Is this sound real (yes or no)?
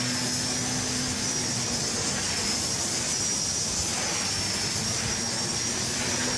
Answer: yes